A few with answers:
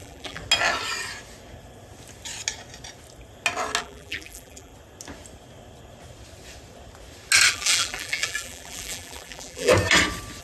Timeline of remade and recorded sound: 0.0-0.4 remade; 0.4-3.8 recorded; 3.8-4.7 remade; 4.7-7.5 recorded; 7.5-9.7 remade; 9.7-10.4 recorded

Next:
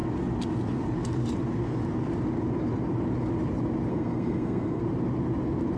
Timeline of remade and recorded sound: 0.0-3.9 recorded; 3.9-4.8 remade; 4.8-5.8 recorded